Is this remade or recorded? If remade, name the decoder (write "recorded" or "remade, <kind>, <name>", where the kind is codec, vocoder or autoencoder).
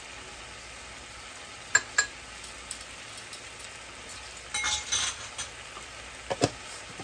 recorded